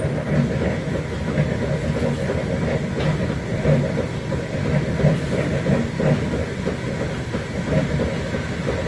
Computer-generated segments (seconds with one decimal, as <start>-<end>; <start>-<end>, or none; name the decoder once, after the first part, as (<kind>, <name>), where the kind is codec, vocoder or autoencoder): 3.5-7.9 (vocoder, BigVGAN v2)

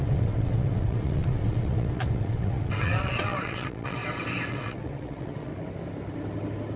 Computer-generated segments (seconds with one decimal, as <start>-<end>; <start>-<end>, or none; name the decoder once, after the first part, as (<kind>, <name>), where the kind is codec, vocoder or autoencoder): 0.0-4.0 (vocoder, WaveNeXt); 4.5-5.5

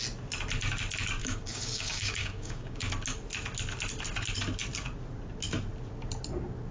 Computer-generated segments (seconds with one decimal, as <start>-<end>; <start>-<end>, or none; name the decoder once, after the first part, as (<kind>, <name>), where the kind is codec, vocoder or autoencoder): 1.2-2.9 (codec, DAC)

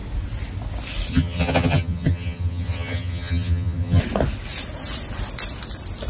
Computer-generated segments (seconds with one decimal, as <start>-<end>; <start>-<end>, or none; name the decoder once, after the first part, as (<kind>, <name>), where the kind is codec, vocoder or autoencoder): 1.1-4.0 (vocoder, HiFi-GAN)